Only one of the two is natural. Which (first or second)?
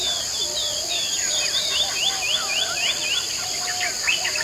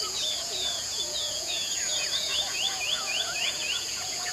first